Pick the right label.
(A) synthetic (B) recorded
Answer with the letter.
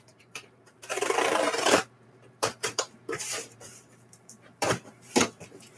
A